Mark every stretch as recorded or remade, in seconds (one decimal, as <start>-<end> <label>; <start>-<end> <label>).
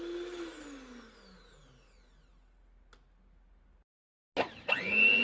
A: 0.0-5.2 recorded